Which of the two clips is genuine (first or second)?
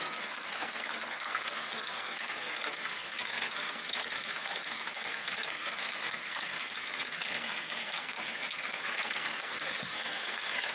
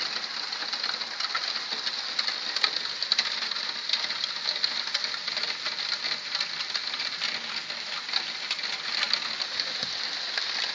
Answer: second